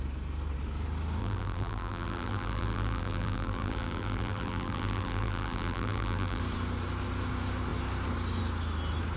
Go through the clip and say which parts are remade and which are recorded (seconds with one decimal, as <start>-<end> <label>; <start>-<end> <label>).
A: 0.0-1.2 recorded; 1.2-6.4 remade; 6.4-9.2 recorded